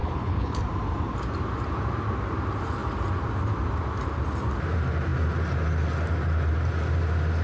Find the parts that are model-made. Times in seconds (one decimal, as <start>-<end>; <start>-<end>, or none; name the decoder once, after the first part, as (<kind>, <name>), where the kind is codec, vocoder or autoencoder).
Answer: 0.0-0.6 (codec, HILCodec)